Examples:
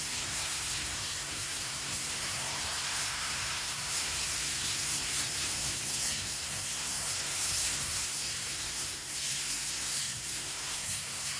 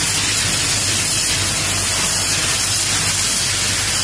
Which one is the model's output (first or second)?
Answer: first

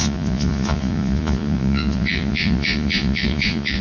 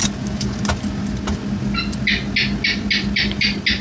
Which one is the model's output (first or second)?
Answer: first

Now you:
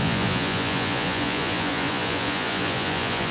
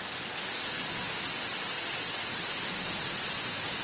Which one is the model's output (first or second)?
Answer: first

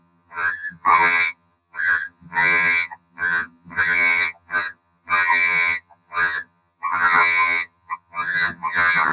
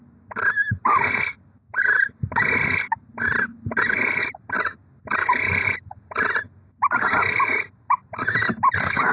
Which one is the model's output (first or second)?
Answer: first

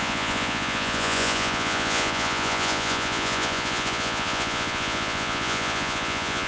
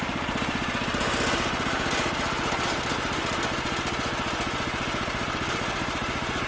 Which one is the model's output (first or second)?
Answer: first